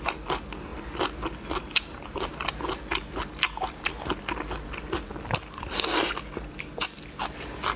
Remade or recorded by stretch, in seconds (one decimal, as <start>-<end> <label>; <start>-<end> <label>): 0.0-7.8 recorded